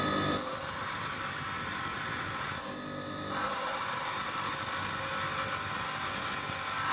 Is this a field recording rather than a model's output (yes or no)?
yes